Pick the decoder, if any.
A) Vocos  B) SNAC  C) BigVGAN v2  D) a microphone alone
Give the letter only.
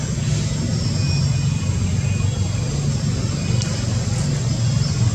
D